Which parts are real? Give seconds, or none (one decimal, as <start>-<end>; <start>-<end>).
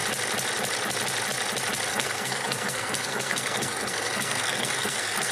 0.0-1.9